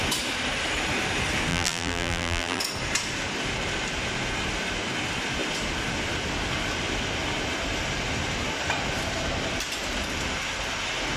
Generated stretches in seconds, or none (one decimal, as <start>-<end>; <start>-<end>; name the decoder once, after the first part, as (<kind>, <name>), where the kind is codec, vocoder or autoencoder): 1.5-2.6 (vocoder, BigVGAN v2)